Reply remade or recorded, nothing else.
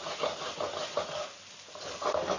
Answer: recorded